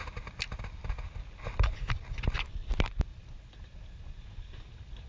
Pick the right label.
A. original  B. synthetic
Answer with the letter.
A